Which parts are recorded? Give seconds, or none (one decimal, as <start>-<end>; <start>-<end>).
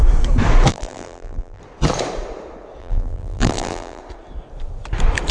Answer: 0.0-0.7; 1.6-2.8; 4.0-5.3